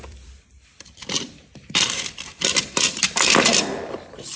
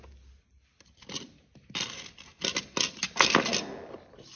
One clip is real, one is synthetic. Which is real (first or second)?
second